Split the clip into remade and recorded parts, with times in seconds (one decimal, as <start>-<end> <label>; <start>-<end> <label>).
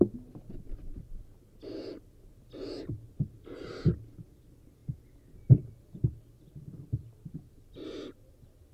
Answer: 0.0-0.7 recorded; 0.7-2.1 remade; 2.1-8.7 recorded